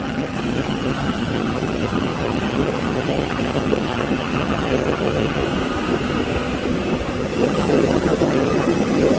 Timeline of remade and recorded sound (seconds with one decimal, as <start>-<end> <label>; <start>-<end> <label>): 0.0-5.4 remade; 5.4-7.2 recorded; 7.2-9.2 remade